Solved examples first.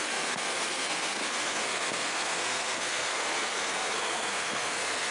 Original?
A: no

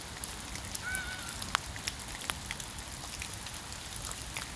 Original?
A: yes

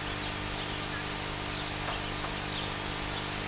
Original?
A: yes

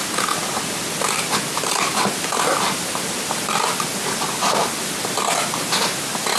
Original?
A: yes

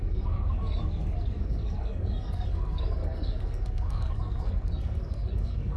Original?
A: no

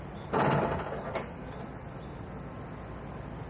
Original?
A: yes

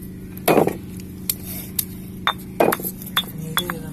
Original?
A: yes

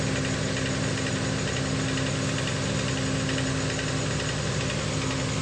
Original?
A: yes